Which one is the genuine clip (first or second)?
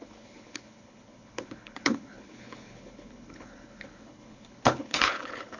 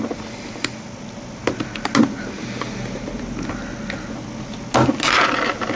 second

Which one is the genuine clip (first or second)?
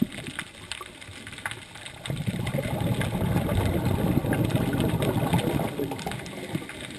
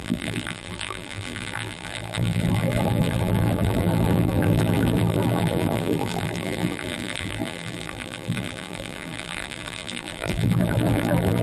first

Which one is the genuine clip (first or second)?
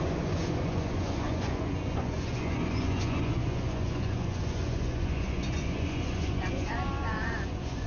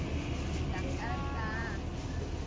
second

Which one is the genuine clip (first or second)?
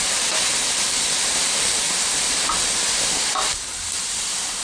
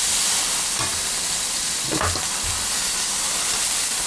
second